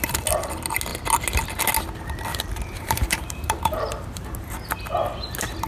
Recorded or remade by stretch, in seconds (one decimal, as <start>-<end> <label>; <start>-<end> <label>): 0.0-2.3 recorded; 2.3-4.5 remade; 4.5-5.7 recorded